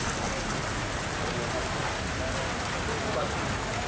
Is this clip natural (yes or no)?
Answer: yes